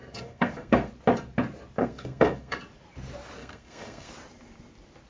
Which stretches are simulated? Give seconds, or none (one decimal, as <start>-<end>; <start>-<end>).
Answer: 0.0-0.9; 1.8-2.6; 3.4-4.1